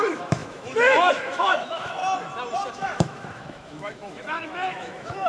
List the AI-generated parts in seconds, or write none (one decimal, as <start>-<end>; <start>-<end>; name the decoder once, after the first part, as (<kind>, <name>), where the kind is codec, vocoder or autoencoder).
0.0-2.0 (autoencoder, DAC-VAE); 2.7-5.3